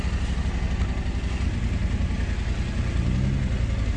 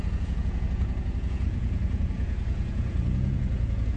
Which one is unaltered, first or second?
first